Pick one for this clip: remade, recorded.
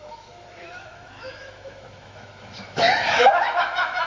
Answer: remade